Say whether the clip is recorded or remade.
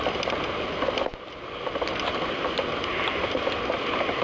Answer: recorded